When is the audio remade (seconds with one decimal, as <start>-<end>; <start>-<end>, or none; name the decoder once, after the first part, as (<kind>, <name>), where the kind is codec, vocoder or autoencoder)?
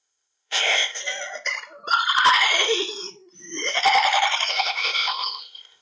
0.0-1.0 (codec, ZipCodec); 4.5-5.8